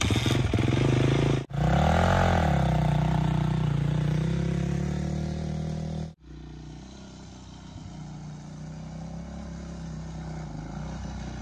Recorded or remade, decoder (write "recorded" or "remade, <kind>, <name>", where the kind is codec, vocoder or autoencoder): recorded